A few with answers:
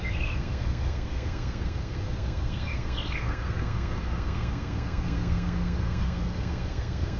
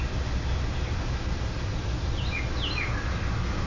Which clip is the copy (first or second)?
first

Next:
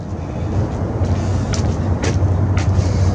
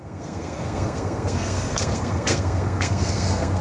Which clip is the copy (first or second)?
second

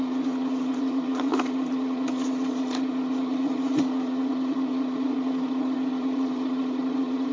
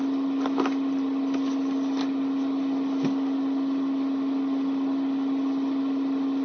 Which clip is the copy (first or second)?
first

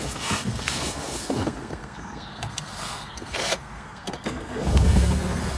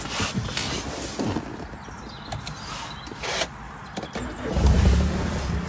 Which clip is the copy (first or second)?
first